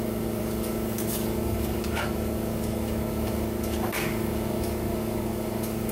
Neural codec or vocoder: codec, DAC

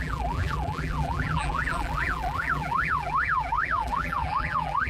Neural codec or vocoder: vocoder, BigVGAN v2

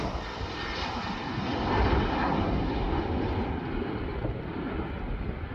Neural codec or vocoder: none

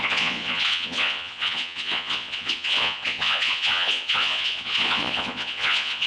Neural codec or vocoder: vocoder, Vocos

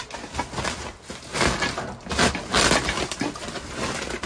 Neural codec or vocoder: none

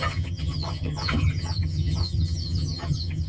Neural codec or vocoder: vocoder, HiFi-GAN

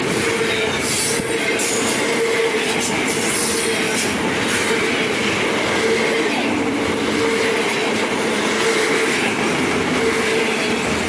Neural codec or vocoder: none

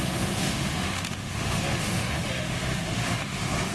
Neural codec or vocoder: autoencoder, DAC-VAE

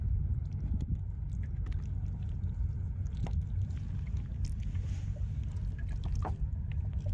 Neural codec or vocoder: none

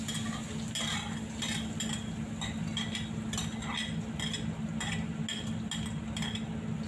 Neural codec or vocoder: none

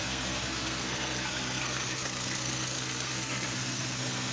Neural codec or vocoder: codec, SNAC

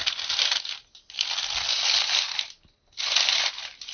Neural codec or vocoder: none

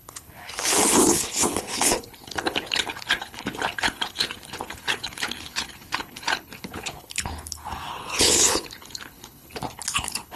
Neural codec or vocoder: codec, HILCodec